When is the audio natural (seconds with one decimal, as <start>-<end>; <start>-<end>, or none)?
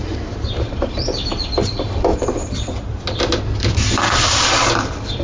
1.3-2.1; 3.2-5.2